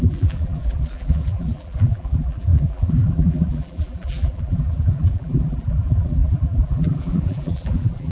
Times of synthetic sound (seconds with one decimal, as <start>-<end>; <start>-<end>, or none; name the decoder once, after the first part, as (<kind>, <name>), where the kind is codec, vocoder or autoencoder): 0.0-8.1 (vocoder, BigVGAN v2)